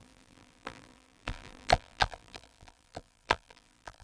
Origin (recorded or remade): remade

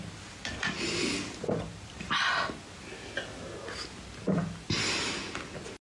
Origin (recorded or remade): recorded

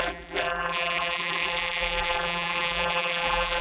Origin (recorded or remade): remade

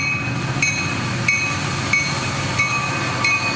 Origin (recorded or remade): recorded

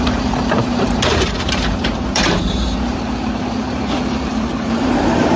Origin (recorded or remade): remade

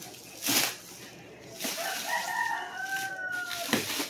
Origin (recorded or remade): recorded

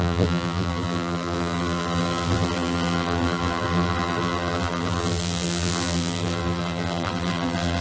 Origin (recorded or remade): remade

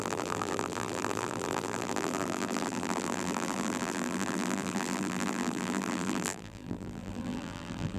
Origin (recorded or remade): remade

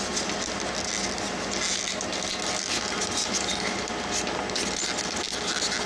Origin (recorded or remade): recorded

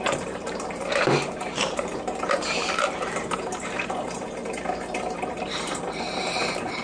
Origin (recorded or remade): remade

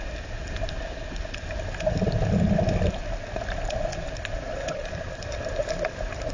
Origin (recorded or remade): recorded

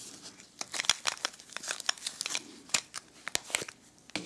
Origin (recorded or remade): recorded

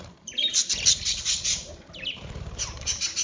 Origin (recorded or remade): remade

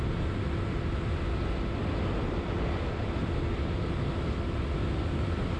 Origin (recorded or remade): recorded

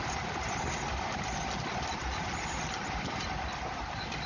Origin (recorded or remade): recorded